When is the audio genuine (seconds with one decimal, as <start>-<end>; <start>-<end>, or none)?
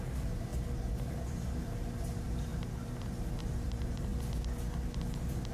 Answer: 0.5-1.1; 2.5-3.4; 4.1-5.5